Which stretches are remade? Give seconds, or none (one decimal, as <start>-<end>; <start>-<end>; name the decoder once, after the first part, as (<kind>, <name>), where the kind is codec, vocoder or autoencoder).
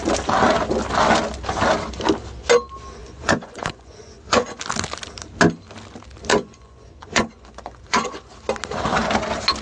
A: 3.0-4.6 (vocoder, Vocos); 6.3-8.3